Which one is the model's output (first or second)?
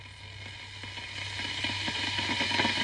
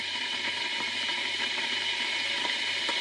second